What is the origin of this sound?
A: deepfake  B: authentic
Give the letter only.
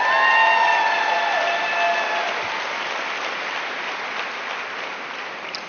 B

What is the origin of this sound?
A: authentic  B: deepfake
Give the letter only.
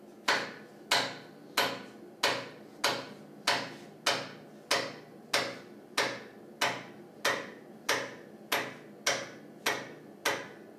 A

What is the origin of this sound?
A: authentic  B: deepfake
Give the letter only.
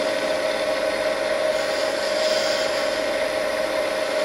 A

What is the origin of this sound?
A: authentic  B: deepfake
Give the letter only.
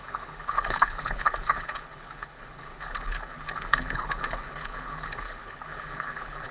B